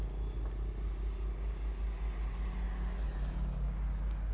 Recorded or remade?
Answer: recorded